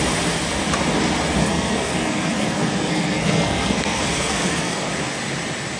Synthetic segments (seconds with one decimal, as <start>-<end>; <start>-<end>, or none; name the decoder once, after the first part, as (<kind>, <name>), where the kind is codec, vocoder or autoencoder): 1.4-4.9 (codec, SNAC)